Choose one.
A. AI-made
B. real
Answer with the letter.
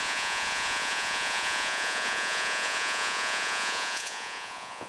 A